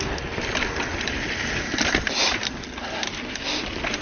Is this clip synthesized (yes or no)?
no